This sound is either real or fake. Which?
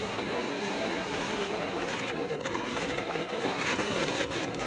fake